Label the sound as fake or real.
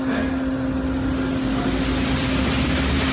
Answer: real